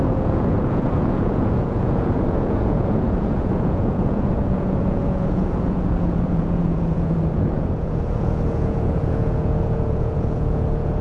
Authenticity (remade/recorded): remade